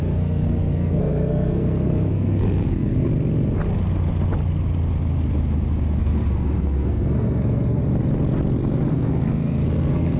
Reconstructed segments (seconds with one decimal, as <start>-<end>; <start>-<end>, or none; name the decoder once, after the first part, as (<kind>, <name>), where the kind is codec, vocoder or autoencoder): 0.0-3.1 (codec, SNAC); 6.0-7.8; 8.9-10.2